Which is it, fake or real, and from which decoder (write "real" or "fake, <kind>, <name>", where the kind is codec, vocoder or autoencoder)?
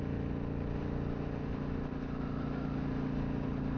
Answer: real